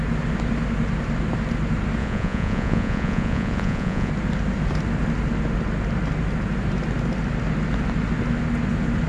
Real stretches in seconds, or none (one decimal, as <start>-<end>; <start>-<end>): 0.0-2.0; 4.1-9.1